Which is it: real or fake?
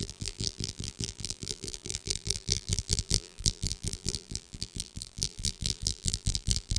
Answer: fake